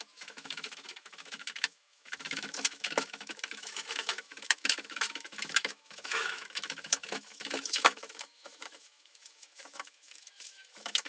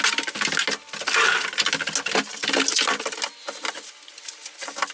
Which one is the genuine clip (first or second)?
second